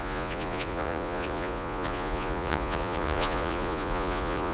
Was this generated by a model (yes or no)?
yes